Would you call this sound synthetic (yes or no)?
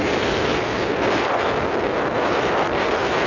no